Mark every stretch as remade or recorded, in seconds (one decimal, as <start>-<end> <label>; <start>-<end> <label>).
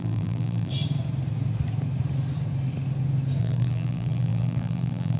0.0-0.7 remade; 0.7-3.4 recorded; 3.4-5.2 remade